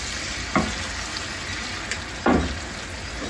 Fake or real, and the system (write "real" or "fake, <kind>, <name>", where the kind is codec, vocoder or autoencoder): real